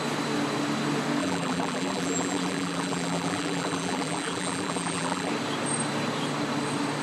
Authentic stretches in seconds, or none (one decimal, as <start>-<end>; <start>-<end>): 0.0-1.2; 5.3-7.0